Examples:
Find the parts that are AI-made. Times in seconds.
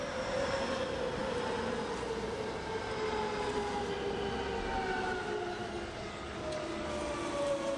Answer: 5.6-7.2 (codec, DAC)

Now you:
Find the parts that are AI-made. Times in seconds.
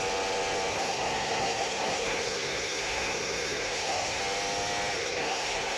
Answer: 0.7-4.2 (codec, SNAC); 5.0-5.8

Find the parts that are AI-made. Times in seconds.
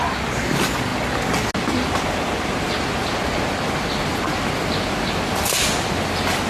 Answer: none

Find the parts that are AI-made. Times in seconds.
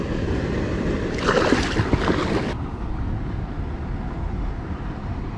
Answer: none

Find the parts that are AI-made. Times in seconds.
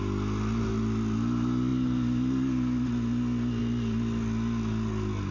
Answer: none